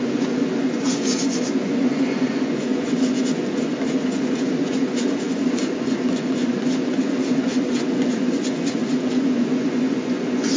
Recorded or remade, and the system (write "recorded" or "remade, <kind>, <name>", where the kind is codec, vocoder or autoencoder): remade, vocoder, Vocos